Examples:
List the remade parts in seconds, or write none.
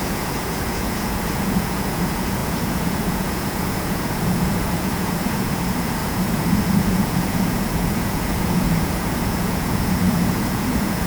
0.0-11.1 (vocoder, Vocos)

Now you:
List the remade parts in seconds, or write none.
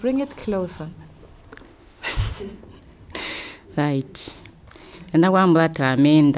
1.7-2.6 (autoencoder, DAC-VAE); 3.2-4.4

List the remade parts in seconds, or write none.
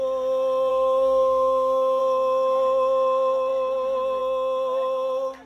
0.7-2.0 (codec, SNAC)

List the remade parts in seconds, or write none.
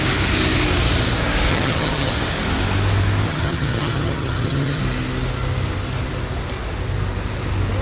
1.5-2.1 (vocoder, HiFi-GAN); 3.3-4.8